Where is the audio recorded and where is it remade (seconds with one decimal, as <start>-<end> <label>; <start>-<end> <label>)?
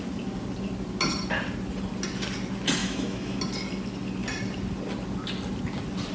0.0-2.8 recorded; 2.8-3.4 remade; 3.4-6.1 recorded